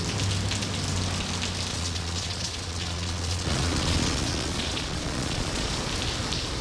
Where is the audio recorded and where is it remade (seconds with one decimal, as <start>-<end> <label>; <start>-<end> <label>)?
0.0-1.7 recorded; 1.7-5.7 remade; 5.7-6.6 recorded